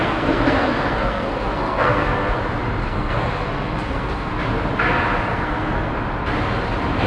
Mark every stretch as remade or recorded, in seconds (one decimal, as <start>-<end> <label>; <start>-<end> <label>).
0.0-2.4 remade; 2.4-2.8 recorded; 2.8-4.3 remade; 4.3-5.3 recorded; 5.3-5.9 remade; 5.9-7.1 recorded